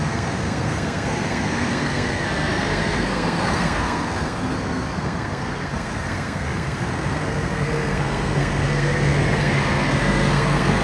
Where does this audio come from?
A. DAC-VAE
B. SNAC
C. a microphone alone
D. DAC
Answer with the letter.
B